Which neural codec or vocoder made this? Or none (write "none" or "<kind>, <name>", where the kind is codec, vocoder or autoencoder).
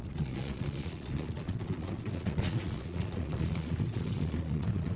vocoder, Vocos